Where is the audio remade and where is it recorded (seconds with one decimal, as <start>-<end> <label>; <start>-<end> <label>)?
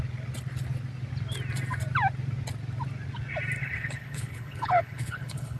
0.0-3.6 recorded; 3.6-5.6 remade